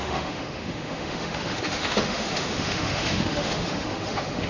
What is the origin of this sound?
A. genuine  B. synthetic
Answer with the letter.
B